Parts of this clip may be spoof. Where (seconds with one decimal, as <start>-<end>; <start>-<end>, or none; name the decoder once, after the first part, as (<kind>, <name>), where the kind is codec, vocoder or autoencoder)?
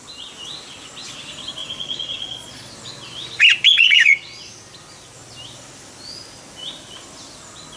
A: 1.6-2.7 (vocoder, Vocos); 3.7-4.5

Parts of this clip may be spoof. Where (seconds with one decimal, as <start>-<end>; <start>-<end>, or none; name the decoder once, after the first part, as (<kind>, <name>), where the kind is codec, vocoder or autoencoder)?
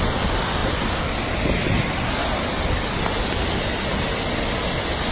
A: none